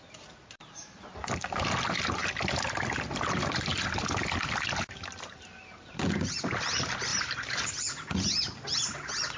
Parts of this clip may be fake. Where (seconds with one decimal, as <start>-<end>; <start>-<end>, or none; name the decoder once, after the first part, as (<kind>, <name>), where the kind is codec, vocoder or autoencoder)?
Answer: none